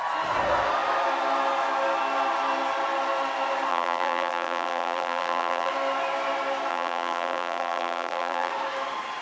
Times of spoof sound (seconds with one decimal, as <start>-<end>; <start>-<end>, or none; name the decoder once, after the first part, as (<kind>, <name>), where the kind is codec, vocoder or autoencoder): 3.7-5.7 (vocoder, BigVGAN v2); 6.7-8.5